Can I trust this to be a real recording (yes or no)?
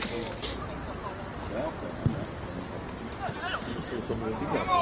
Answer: yes